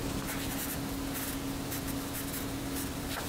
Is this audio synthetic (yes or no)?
no